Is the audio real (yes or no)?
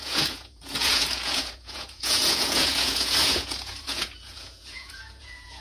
no